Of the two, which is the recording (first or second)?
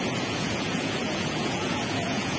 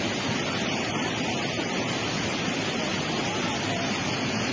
second